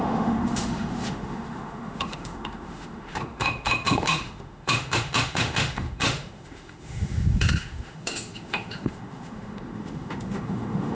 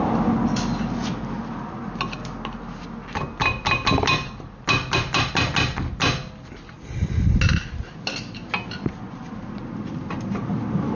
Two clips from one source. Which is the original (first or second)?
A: second